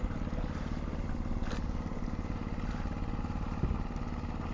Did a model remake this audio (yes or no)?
no